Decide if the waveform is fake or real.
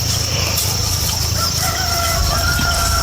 real